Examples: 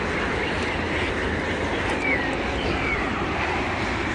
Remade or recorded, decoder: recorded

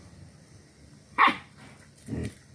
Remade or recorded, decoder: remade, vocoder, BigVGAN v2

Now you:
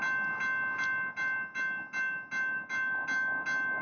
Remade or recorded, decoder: recorded